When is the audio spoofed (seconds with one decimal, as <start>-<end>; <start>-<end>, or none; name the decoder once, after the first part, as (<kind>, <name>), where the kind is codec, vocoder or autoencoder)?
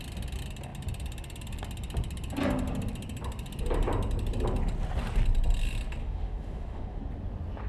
6.0-7.0 (autoencoder, DAC-VAE)